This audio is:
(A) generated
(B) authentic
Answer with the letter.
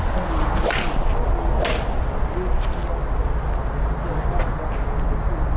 B